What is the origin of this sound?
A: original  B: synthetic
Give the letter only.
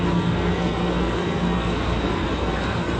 B